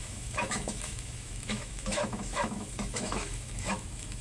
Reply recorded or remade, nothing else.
remade